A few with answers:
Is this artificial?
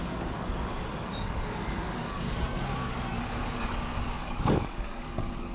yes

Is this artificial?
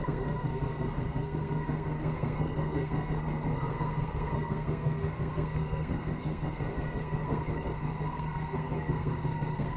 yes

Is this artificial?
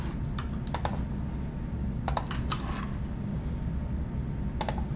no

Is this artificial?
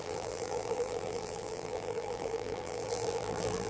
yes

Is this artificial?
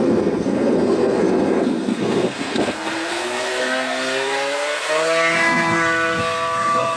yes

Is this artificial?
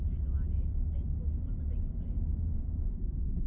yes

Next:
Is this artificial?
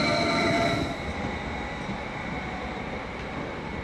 no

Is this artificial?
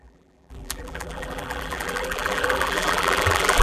yes